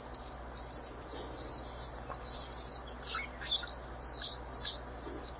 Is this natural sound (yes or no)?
yes